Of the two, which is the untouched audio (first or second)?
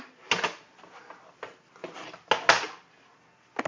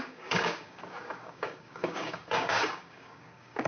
first